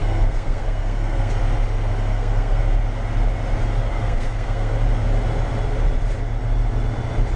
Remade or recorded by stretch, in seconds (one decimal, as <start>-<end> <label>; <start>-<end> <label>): 0.0-1.3 remade; 1.3-2.1 recorded; 2.1-2.6 remade; 2.6-3.9 recorded; 3.9-4.7 remade; 4.7-7.4 recorded